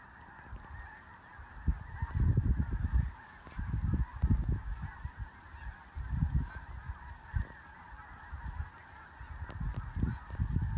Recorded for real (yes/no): yes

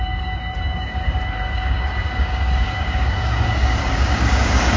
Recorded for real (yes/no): no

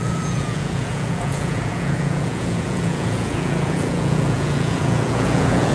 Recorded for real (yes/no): no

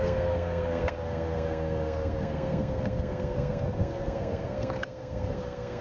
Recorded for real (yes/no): no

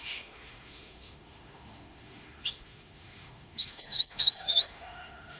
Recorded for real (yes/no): no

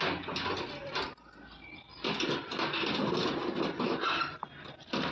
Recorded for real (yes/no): yes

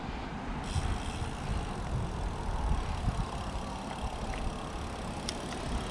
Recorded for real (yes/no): yes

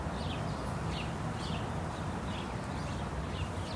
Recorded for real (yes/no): yes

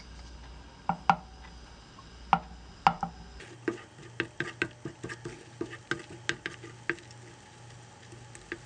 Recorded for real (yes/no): yes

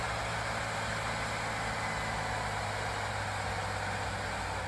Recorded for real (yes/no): yes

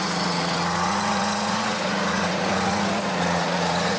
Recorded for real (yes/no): no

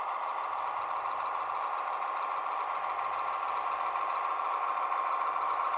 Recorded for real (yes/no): no